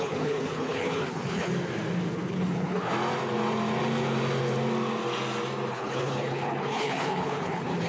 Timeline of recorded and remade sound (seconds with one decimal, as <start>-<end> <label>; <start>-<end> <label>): 0.0-1.5 remade; 1.5-2.1 recorded; 2.1-2.9 remade; 2.9-5.7 recorded; 5.7-7.9 remade

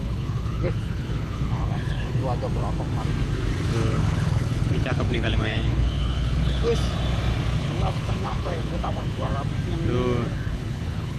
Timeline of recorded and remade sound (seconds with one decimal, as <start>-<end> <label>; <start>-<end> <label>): 0.0-2.2 remade; 2.2-3.7 recorded; 3.7-6.7 remade; 6.7-7.6 recorded; 7.6-9.3 remade; 9.3-10.3 recorded; 10.3-11.2 remade

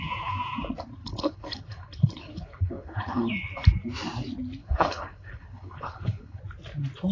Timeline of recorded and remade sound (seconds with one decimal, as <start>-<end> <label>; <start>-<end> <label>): 0.0-1.0 recorded; 1.0-3.3 remade; 3.3-4.6 recorded; 4.6-6.4 remade; 6.4-7.1 recorded

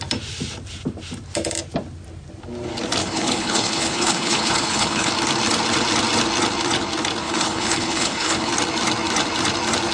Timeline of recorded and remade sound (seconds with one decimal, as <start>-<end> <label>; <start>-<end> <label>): 0.0-3.0 recorded; 3.0-5.1 remade; 5.1-7.2 recorded; 7.2-8.5 remade; 8.5-9.9 recorded

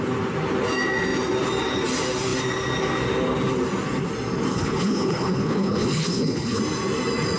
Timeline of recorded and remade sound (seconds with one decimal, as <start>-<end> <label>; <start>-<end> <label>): 0.0-4.5 recorded; 4.5-6.6 remade; 6.6-7.4 recorded

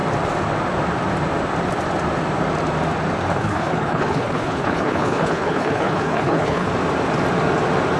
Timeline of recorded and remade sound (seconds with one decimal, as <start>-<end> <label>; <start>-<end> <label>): 0.0-3.3 recorded; 3.3-6.7 remade; 6.7-8.0 recorded

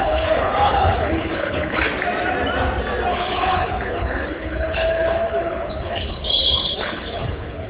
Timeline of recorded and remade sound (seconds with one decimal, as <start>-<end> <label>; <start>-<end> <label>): 0.0-1.9 remade; 1.9-3.1 recorded; 3.1-7.7 remade